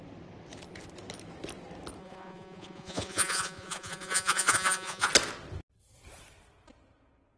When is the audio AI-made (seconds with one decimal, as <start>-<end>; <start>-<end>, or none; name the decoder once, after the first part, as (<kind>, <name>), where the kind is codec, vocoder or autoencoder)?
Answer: 2.0-5.1 (vocoder, Vocos)